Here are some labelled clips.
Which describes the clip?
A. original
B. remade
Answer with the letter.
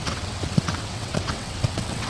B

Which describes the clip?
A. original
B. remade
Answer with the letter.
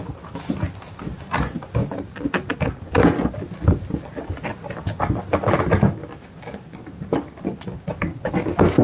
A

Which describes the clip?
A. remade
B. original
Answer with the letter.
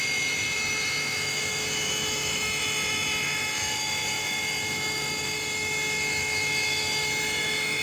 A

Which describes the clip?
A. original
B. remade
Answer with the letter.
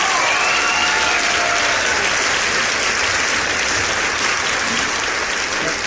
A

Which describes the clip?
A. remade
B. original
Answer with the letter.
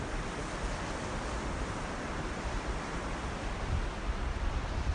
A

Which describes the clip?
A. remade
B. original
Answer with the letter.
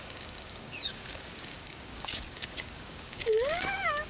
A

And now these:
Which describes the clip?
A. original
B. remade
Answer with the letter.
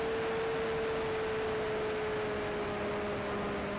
A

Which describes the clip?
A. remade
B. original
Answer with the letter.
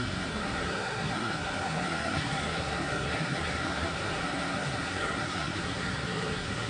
A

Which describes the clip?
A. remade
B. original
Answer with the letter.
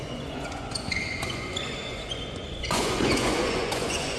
A